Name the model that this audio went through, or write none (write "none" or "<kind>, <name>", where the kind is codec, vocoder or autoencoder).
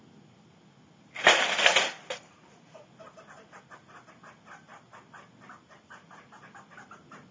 none